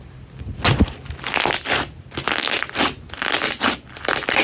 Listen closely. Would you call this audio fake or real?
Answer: real